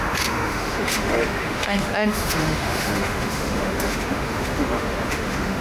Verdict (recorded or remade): remade